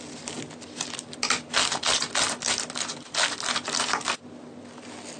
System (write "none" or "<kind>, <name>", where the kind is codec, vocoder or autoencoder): none